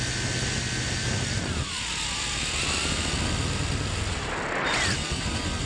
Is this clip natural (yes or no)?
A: yes